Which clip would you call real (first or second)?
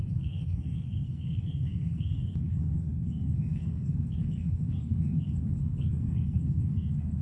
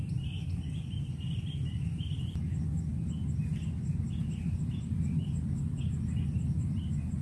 second